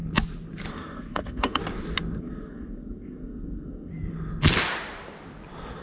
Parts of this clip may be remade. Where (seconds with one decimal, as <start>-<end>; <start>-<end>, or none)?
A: 0.7-1.6; 2.2-3.9